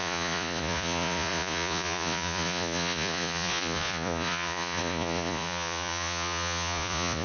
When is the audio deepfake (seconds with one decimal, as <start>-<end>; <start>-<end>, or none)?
0.0-7.2